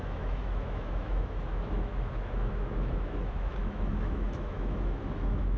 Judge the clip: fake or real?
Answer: fake